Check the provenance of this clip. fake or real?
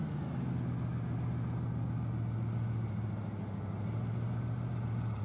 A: real